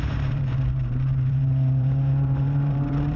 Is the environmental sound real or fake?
fake